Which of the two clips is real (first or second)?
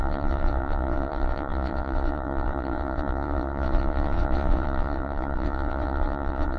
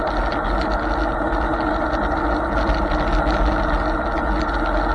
second